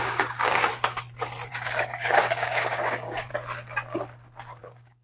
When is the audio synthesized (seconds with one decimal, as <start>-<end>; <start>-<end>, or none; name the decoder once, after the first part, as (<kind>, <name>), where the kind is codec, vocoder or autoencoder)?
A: 0.0-0.7 (codec, DAC); 1.5-3.3; 4.6-5.0